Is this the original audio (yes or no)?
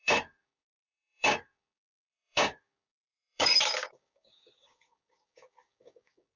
no